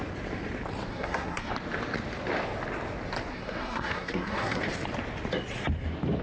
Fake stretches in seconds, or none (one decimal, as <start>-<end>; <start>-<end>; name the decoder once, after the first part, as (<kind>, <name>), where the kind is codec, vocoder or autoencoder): 0.9-1.5 (codec, SNAC); 3.3-4.6